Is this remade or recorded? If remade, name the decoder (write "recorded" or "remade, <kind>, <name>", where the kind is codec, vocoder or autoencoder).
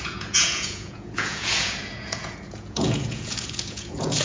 remade, vocoder, Vocos